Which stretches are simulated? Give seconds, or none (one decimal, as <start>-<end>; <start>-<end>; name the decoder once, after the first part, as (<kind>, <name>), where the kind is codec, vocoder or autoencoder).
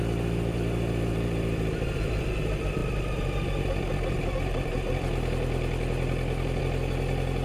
none